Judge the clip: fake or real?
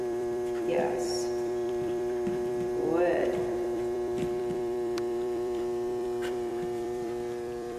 fake